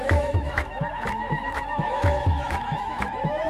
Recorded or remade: remade